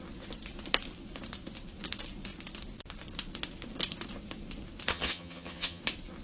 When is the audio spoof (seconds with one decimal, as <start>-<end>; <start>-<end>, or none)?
4.9-5.8